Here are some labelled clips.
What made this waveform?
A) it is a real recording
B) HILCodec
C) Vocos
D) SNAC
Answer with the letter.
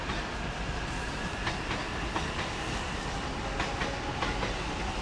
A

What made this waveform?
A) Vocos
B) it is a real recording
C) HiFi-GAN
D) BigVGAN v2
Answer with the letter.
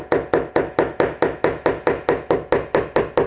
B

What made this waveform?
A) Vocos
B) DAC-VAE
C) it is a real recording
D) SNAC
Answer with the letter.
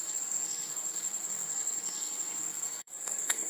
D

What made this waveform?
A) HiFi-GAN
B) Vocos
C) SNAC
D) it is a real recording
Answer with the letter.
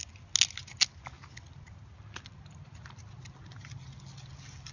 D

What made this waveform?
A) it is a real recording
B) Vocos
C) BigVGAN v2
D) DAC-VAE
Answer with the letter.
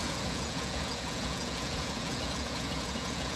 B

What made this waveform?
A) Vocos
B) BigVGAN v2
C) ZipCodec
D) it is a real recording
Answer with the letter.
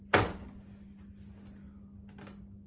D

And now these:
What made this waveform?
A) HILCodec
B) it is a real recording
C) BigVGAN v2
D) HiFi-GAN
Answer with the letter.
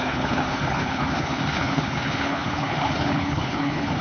A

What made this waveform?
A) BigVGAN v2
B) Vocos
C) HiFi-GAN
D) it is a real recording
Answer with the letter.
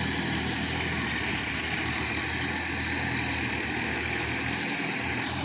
D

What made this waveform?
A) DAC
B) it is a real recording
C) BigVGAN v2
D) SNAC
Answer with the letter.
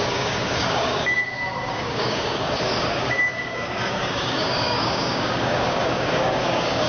A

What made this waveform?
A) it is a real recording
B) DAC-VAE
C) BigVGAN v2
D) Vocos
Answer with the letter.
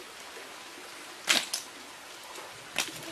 A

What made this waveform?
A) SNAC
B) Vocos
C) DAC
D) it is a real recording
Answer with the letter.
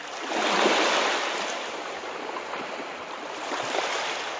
D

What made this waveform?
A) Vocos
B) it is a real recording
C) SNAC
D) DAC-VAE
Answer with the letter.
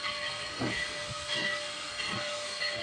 C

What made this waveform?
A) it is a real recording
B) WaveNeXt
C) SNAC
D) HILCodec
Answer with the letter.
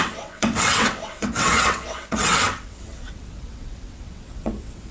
B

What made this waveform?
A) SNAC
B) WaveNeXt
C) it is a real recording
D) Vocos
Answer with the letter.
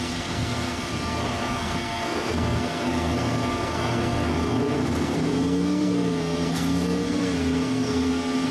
A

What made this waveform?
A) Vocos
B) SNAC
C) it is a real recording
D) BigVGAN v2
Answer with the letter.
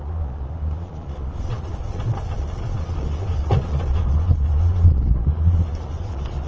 A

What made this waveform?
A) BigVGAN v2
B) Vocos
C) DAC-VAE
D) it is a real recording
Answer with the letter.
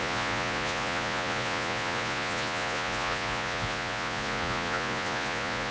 B